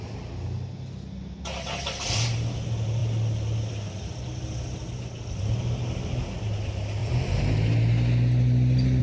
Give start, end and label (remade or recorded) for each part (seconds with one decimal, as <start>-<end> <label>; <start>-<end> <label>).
0.0-9.0 recorded